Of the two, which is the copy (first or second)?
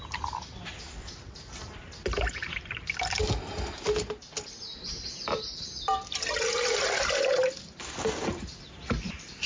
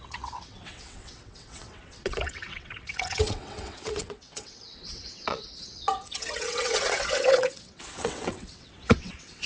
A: second